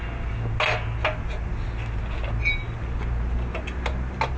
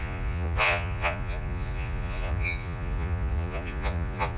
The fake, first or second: second